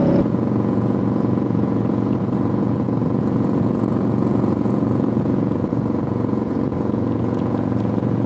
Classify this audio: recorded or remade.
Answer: remade